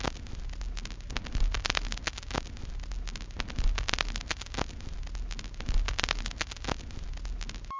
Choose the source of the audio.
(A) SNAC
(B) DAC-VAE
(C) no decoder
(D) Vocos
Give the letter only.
C